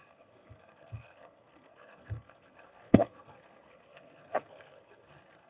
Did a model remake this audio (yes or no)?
yes